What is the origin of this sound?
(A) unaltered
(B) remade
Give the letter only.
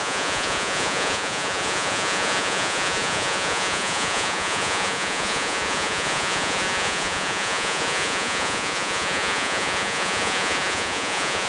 B